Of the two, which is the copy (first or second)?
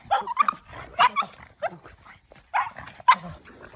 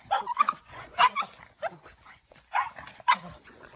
second